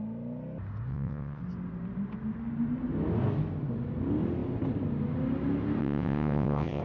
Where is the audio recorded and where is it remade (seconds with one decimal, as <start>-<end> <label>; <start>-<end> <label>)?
0.0-0.9 recorded; 0.9-1.4 remade; 1.4-5.8 recorded; 5.8-6.8 remade